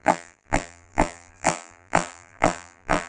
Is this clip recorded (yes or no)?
no